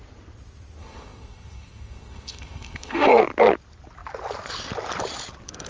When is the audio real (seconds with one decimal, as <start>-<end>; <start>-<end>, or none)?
0.0-0.8; 3.1-5.7